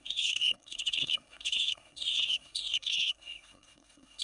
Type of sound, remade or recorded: remade